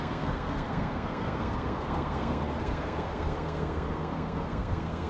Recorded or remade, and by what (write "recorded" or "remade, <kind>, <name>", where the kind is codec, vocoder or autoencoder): remade, codec, SNAC